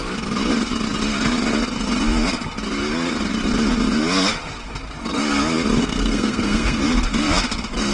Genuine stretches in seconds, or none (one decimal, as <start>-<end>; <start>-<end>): 0.0-5.8; 6.8-7.9